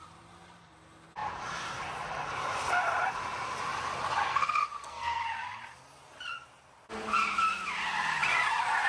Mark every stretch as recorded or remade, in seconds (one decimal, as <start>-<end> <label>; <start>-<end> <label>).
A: 0.0-4.2 recorded; 4.2-5.2 remade; 5.2-8.9 recorded